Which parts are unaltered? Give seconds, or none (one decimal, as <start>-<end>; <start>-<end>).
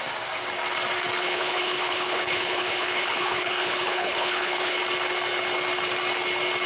0.0-1.2; 4.8-6.7